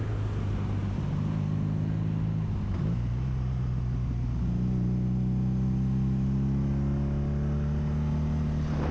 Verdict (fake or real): real